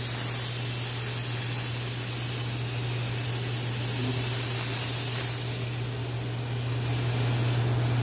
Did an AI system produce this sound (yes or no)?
no